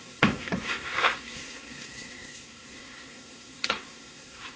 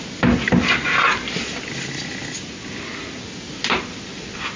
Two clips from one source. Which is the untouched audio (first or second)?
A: second